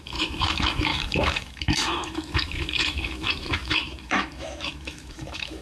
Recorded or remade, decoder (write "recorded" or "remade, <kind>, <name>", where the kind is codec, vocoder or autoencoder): remade, autoencoder, DAC-VAE